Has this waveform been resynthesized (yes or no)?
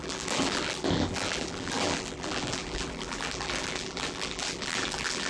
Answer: yes